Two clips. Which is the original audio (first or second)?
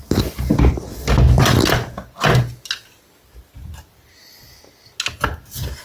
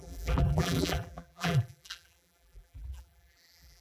first